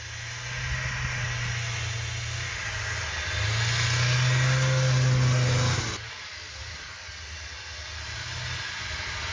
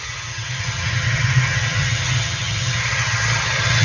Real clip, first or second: first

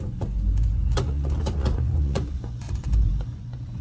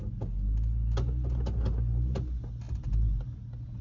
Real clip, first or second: second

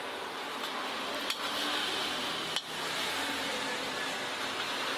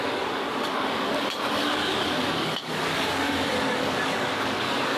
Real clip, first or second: first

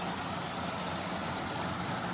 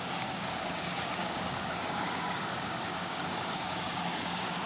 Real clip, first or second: first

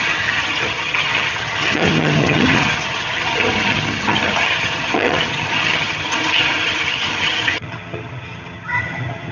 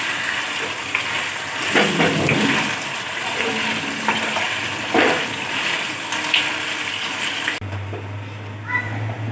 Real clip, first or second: second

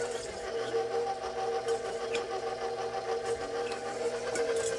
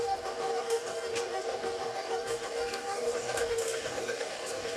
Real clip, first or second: first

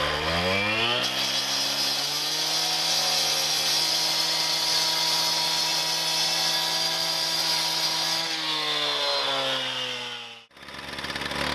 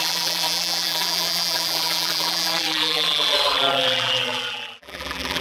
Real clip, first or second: first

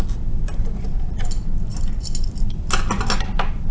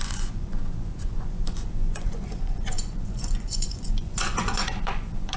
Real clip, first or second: first